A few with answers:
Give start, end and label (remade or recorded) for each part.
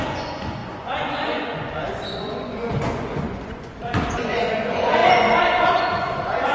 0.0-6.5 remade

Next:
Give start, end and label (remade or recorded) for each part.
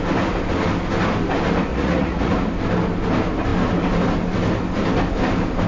0.0-1.7 recorded; 1.7-2.3 remade; 2.3-5.7 recorded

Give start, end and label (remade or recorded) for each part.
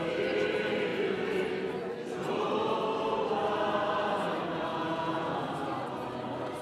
0.0-4.7 recorded; 4.7-5.5 remade; 5.5-6.6 recorded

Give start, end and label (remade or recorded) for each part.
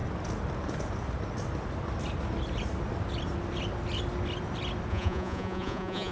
0.0-4.9 recorded; 4.9-6.1 remade